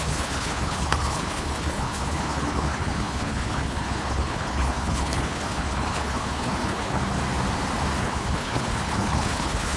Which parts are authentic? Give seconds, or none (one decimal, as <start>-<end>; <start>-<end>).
7.2-8.0